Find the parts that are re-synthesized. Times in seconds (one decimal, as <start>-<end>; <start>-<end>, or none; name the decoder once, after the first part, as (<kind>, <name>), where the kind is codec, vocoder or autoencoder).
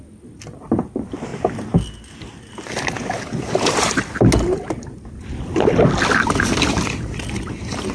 0.0-1.3 (vocoder, BigVGAN v2); 5.2-7.9